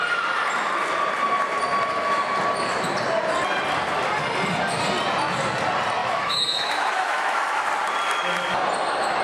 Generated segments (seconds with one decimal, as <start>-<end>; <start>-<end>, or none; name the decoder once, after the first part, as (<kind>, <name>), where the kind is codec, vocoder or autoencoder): 6.0-7.7 (autoencoder, DAC-VAE)